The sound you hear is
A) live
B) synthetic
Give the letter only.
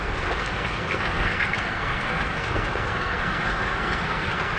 B